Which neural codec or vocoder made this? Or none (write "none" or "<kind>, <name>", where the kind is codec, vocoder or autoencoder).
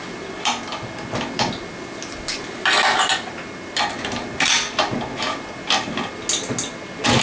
none